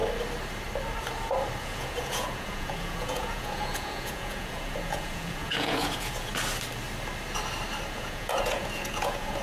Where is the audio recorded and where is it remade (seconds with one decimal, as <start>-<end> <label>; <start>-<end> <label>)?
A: 0.0-1.6 recorded; 1.6-6.3 remade; 6.3-7.9 recorded; 7.9-9.4 remade